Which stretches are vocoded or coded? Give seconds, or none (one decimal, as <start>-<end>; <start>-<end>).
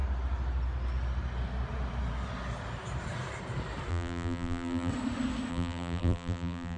3.9-4.9; 5.5-6.8